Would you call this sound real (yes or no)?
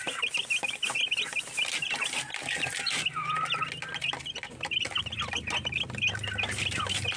yes